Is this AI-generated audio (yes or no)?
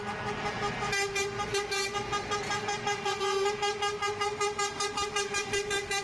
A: no